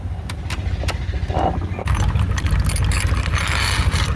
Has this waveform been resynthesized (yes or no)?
no